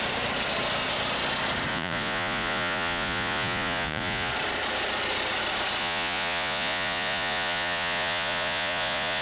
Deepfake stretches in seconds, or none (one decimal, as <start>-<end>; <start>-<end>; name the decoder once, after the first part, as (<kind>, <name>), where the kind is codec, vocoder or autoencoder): 1.7-4.3 (vocoder, Vocos); 5.8-9.2